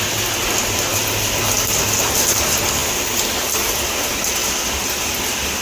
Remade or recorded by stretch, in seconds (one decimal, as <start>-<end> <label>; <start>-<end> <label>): 0.0-5.6 recorded